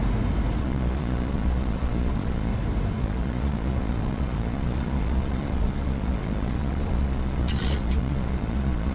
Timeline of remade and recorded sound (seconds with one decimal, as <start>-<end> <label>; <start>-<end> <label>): 0.0-0.6 recorded; 0.6-2.5 remade; 2.5-3.0 recorded; 3.0-8.9 remade